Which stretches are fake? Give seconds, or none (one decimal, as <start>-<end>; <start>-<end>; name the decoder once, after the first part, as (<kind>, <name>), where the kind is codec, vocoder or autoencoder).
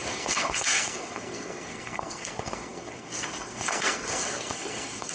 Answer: 0.0-5.1 (codec, SNAC)